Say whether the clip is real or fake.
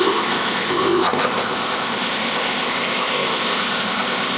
fake